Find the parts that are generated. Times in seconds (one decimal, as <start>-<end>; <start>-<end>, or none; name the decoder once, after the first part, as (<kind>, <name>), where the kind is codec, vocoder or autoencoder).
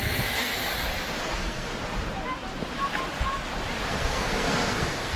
0.0-0.6 (codec, SNAC); 1.2-1.7; 3.9-5.2